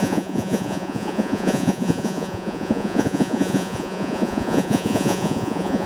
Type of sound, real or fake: fake